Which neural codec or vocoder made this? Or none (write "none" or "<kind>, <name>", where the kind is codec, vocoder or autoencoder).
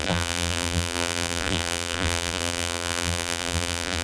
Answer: vocoder, BigVGAN v2